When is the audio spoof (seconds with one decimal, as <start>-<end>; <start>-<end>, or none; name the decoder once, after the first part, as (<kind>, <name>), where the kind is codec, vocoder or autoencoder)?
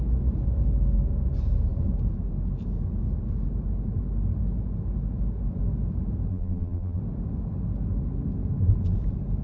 6.3-7.0 (vocoder, BigVGAN v2)